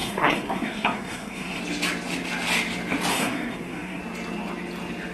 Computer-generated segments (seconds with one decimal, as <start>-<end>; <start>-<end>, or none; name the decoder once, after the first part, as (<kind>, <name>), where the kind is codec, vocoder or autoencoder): 0.0-1.6 (codec, SNAC); 3.1-4.0